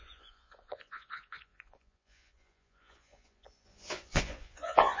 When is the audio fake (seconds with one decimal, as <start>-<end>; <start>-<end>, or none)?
0.0-5.0